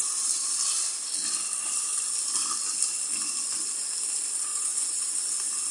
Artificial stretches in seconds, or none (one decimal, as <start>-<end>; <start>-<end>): 4.5-5.1